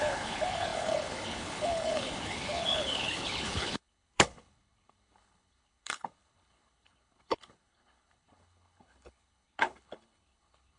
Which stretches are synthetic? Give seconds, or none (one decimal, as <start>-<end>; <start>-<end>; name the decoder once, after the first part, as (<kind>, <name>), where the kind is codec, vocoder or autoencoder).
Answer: 0.0-10.8 (codec, HILCodec)